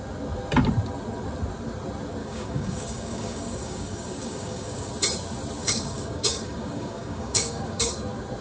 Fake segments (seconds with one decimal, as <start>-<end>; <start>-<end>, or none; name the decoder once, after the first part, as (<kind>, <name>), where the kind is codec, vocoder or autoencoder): 2.2-4.9 (codec, DAC); 5.6-8.0